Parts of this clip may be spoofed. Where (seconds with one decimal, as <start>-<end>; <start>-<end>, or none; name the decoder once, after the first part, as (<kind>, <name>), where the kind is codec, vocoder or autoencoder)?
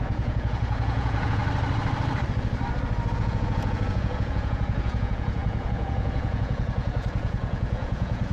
0.0-1.4 (vocoder, Vocos); 3.1-8.3